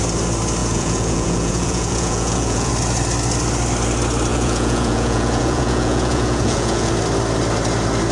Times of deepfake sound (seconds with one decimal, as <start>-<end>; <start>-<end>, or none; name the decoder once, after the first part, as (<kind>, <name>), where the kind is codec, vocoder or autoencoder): 0.6-2.7 (vocoder, Vocos); 4.3-6.9